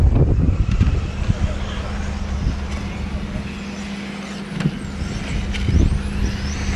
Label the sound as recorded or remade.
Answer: recorded